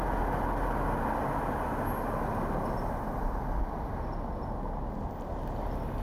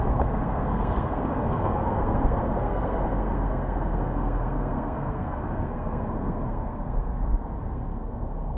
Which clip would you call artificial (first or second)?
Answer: second